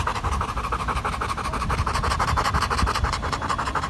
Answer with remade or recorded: recorded